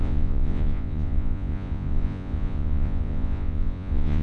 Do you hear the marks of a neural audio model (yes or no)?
yes